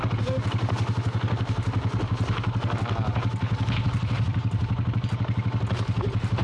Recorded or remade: recorded